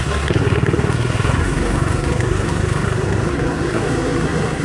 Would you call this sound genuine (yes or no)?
no